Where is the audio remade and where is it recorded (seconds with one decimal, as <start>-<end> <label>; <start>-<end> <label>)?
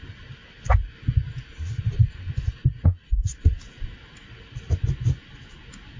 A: 0.0-6.0 recorded